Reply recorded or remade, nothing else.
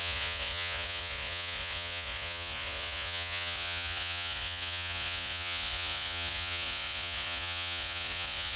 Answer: remade